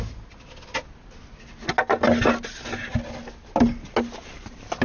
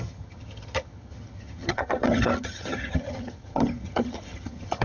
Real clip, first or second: first